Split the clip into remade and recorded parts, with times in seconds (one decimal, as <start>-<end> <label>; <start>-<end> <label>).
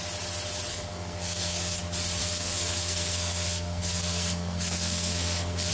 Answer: 0.0-0.7 recorded; 0.7-1.8 remade; 1.8-2.2 recorded; 2.2-5.7 remade